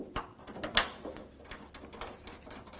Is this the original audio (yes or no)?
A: yes